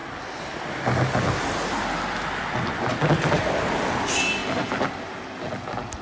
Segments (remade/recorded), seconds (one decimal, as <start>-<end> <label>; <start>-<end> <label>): 0.0-6.0 recorded